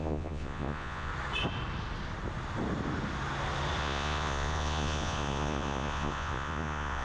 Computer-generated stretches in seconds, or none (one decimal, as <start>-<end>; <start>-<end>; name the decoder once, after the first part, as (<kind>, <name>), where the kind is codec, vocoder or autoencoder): 0.0-1.1 (vocoder, Vocos); 3.8-7.0